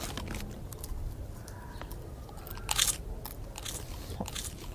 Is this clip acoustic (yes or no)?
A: yes